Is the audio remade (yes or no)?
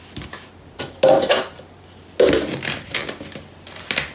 no